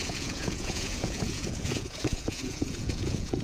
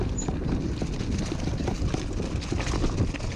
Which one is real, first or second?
second